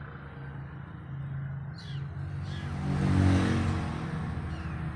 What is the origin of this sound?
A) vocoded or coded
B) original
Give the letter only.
B